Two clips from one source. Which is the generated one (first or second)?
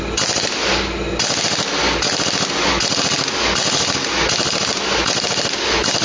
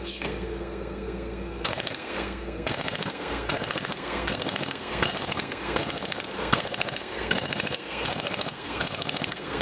second